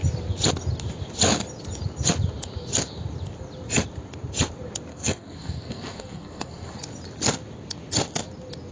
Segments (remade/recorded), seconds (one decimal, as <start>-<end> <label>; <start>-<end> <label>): 0.0-4.9 recorded; 4.9-6.8 remade; 6.8-8.7 recorded